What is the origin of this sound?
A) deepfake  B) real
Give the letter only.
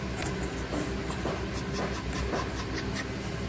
B